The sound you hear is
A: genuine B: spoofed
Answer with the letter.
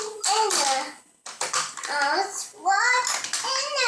A